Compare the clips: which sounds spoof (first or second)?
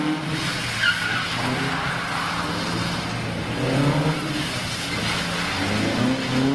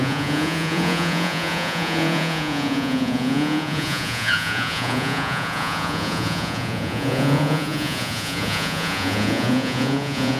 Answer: second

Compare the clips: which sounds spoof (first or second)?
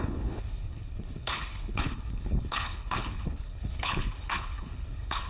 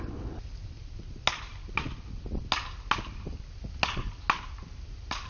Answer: first